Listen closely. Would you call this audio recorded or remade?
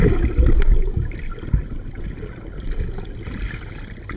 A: recorded